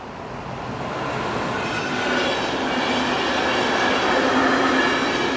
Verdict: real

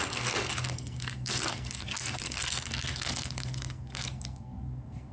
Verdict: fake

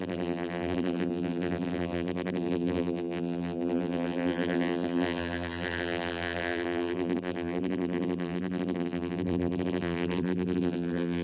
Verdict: fake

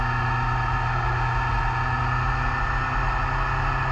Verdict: real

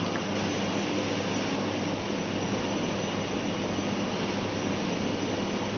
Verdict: real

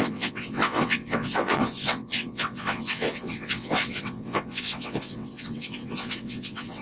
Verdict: fake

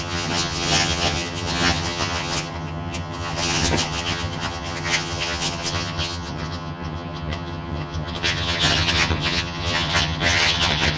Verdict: fake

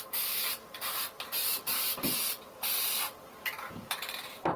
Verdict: fake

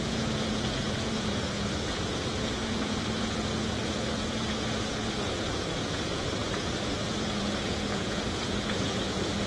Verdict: fake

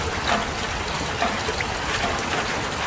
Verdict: real